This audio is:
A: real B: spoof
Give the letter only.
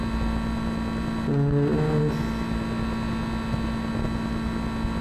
A